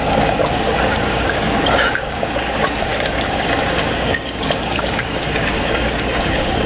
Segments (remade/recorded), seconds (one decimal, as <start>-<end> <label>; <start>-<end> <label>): 0.0-6.7 remade